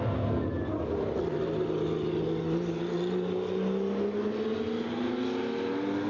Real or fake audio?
real